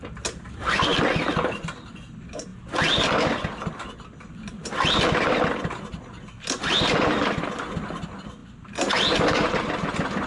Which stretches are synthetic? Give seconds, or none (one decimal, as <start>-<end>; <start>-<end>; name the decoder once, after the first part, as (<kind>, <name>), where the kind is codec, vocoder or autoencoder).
none